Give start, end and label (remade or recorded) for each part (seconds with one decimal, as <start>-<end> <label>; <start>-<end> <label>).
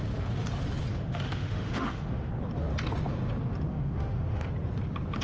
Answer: 0.0-0.9 recorded; 0.9-2.3 remade; 2.3-3.7 recorded; 3.7-4.5 remade; 4.5-5.2 recorded